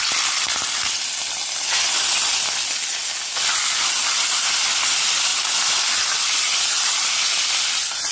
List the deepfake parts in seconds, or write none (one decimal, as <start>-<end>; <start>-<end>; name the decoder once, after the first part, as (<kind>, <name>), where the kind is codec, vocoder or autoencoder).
none